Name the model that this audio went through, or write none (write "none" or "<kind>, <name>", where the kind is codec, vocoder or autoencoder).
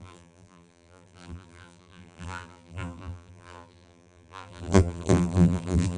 vocoder, BigVGAN v2